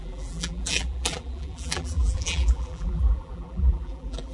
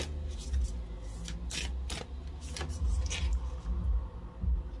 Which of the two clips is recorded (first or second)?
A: second